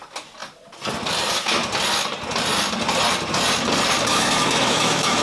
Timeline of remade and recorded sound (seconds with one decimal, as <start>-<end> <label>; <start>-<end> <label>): 0.0-4.1 recorded; 4.1-5.2 remade